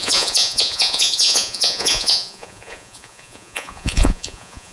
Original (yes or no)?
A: no